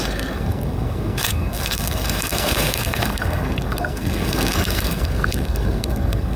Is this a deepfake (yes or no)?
yes